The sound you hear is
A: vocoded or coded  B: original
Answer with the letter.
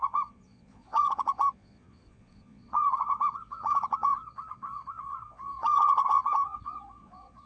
A